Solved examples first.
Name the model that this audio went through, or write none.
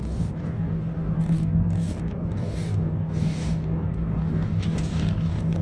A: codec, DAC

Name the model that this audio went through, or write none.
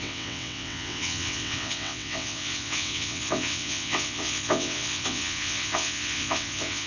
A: vocoder, WaveNeXt